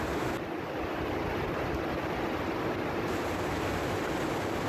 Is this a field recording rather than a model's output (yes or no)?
yes